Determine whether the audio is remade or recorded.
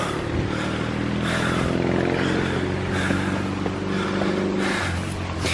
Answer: recorded